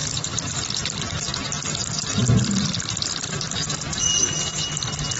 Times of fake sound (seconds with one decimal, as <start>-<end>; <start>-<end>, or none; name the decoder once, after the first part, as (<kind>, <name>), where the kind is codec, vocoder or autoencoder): 0.0-0.7 (vocoder, BigVGAN v2); 3.1-4.6